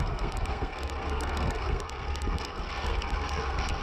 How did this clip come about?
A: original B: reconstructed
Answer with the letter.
B